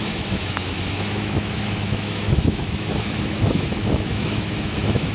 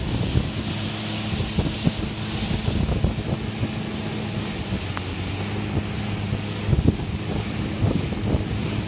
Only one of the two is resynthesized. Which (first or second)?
first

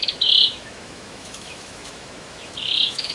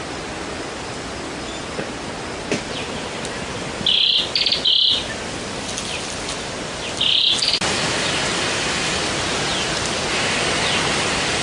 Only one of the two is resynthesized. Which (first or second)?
first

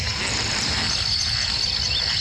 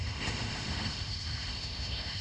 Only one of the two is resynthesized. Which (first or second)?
second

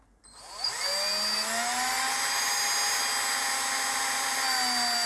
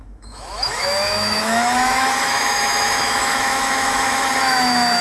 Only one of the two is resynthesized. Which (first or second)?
second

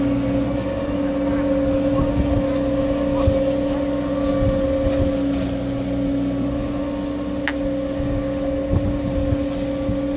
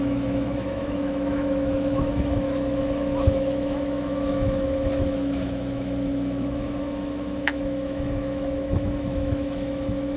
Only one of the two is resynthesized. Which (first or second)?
second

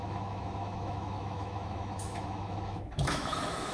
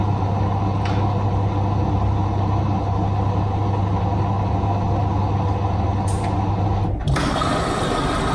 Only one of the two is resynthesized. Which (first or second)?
first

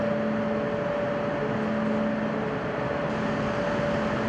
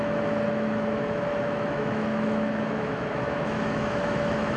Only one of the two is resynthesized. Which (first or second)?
second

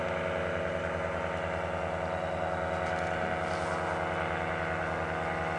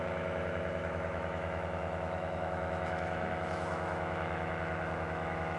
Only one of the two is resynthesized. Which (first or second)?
second